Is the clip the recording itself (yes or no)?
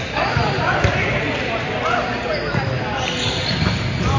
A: yes